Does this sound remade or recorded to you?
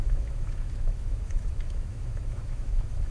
remade